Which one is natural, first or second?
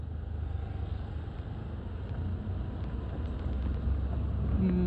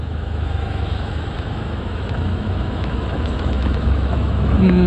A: first